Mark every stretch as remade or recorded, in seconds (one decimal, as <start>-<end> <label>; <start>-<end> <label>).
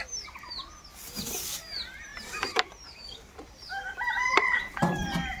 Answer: 0.0-5.4 remade